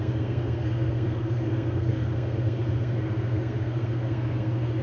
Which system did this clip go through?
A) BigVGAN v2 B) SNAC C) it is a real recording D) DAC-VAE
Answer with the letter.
B